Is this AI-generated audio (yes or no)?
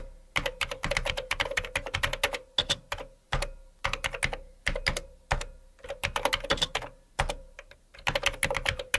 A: no